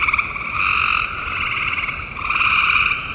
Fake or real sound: real